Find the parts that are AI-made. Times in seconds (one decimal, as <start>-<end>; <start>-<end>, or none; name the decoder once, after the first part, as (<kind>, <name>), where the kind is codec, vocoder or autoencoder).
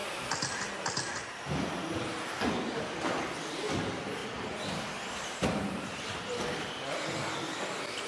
4.2-6.7 (vocoder, BigVGAN v2)